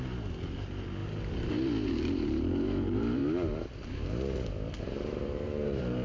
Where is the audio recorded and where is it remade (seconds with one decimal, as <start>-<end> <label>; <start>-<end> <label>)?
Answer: 0.0-3.2 remade; 3.2-4.8 recorded; 4.8-6.0 remade